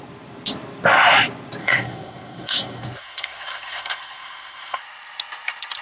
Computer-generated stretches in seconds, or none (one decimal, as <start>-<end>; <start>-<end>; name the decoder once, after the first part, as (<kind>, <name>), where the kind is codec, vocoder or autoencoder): 1.6-4.8 (codec, SNAC)